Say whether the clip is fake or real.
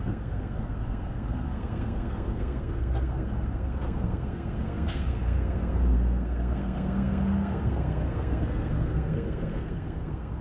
fake